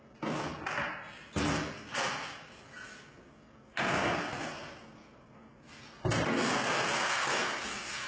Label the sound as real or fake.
real